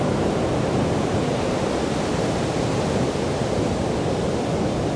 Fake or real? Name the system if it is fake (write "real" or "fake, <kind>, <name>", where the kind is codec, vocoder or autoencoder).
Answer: fake, vocoder, BigVGAN v2